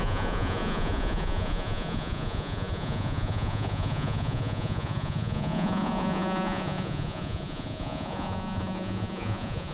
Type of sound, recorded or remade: remade